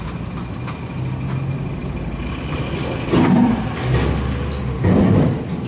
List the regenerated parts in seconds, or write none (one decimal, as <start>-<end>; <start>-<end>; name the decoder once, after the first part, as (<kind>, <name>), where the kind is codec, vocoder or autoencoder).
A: none